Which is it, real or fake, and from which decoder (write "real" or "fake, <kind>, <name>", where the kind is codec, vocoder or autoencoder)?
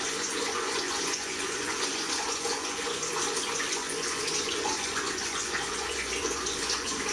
fake, vocoder, Vocos